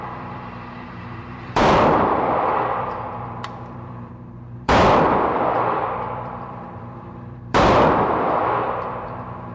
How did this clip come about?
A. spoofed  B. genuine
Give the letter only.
A